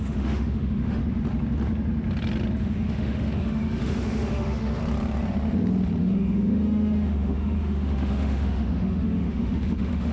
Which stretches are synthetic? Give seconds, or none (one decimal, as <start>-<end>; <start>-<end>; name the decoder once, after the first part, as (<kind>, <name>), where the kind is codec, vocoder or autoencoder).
0.0-1.0 (autoencoder, DAC-VAE); 2.6-4.8; 6.0-10.1